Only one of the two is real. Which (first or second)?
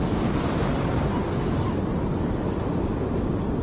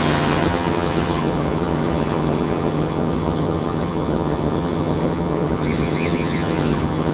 first